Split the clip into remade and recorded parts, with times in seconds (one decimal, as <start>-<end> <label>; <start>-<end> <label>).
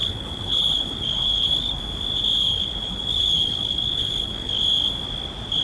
0.0-1.8 remade; 1.8-2.4 recorded; 2.4-4.6 remade; 4.6-5.6 recorded